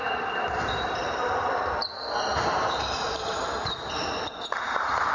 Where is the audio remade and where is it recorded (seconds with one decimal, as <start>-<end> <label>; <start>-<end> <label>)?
0.0-1.2 remade; 1.2-2.3 recorded; 2.3-5.1 remade